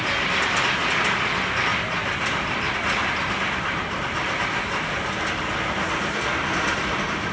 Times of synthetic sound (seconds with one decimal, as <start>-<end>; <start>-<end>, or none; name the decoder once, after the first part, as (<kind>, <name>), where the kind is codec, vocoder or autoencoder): none

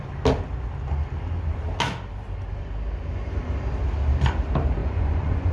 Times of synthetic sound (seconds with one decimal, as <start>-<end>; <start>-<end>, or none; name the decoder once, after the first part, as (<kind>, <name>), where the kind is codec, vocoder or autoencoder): 4.8-5.5 (vocoder, Vocos)

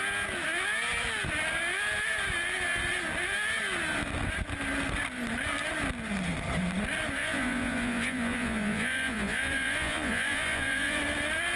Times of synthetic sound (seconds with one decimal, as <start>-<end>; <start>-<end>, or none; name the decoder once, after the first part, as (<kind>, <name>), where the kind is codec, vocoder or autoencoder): 7.2-11.0 (vocoder, Vocos)

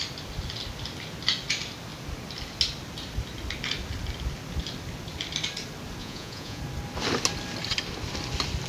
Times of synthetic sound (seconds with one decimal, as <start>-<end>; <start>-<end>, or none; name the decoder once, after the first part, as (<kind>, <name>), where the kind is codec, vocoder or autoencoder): 6.0-6.6 (vocoder, Vocos)